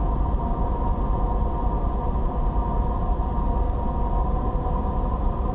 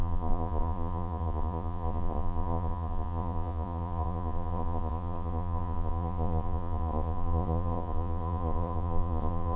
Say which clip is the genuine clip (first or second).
first